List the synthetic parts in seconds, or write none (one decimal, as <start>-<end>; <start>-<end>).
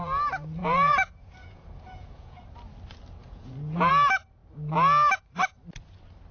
0.6-2.4; 3.2-3.9